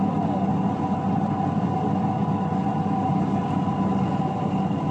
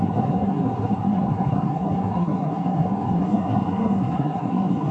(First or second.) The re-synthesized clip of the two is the second